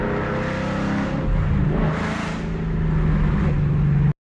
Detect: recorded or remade recorded